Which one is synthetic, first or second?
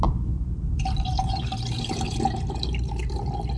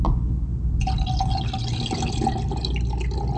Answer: first